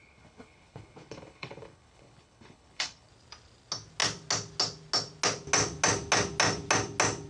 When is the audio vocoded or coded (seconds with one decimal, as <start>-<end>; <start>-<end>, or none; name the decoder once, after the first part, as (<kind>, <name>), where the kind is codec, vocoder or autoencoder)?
0.0-3.1 (codec, HILCodec)